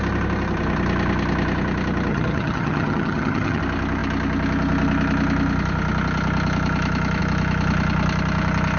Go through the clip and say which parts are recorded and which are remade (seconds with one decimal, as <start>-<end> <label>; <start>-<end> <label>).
0.0-2.1 recorded; 2.1-3.6 remade; 3.6-8.8 recorded